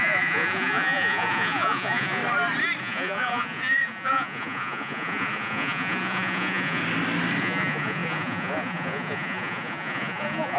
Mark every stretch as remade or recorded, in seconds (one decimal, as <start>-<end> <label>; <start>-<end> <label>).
0.0-2.2 remade; 2.2-2.8 recorded; 2.8-6.8 remade; 6.8-7.4 recorded; 7.4-10.6 remade